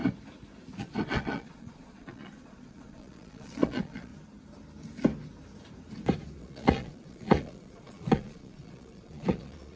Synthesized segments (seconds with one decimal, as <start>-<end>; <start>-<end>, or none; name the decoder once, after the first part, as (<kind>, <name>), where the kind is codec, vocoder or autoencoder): 0.8-4.1 (vocoder, Vocos); 6.4-9.8